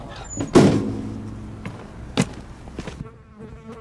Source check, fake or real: real